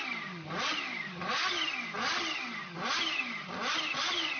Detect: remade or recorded recorded